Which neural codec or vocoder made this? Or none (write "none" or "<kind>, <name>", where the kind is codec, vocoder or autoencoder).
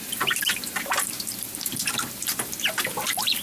vocoder, BigVGAN v2